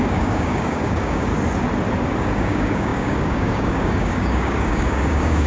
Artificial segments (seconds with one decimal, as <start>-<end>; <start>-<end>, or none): 0.0-1.3; 2.2-5.5